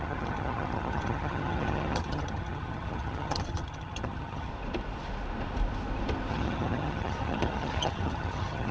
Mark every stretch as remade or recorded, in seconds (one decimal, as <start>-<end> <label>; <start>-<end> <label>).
0.0-4.5 remade; 4.5-6.3 recorded; 6.3-8.7 remade